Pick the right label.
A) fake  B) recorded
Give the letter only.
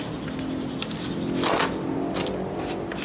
B